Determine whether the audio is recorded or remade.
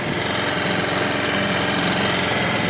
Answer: recorded